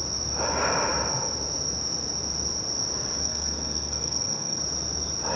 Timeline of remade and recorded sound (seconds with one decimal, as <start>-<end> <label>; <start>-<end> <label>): 0.0-3.2 recorded; 3.2-4.6 remade; 4.6-5.4 recorded